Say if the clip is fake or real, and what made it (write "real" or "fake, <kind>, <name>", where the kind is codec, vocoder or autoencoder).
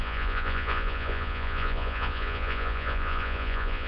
fake, vocoder, Vocos